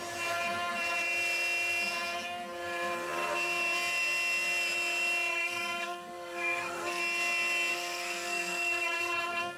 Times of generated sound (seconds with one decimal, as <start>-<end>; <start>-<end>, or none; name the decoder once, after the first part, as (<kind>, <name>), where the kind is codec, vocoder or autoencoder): 5.3-7.0 (codec, SNAC); 7.7-9.6